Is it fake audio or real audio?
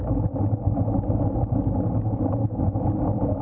real